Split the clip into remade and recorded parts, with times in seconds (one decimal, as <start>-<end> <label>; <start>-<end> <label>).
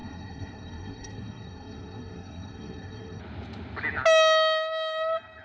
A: 0.0-3.2 remade; 3.2-5.4 recorded